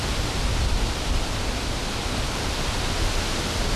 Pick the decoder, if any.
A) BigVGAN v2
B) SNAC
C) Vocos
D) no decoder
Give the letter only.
D